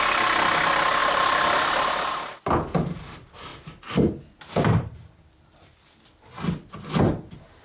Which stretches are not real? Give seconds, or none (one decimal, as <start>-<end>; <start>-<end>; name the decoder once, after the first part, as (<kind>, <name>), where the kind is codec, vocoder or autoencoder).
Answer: 1.0-2.1 (vocoder, BigVGAN v2)